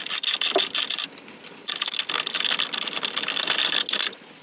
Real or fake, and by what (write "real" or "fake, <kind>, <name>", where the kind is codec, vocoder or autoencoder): real